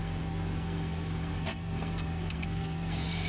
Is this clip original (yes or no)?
no